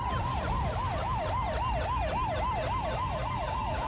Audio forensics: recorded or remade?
recorded